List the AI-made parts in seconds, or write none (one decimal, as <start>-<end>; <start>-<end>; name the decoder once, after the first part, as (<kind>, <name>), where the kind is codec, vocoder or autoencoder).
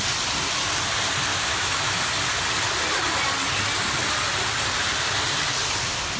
1.3-2.0 (autoencoder, DAC-VAE)